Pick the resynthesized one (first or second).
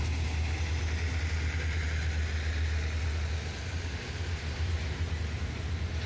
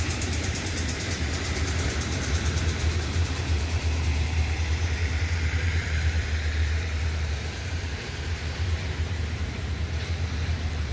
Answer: second